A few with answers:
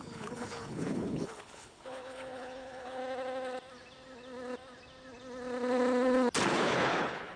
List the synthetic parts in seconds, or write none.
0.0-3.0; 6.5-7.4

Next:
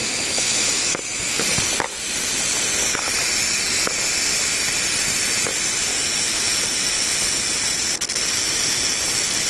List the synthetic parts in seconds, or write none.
0.0-1.4